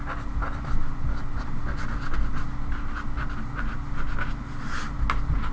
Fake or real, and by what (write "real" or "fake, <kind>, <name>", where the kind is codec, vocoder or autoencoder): real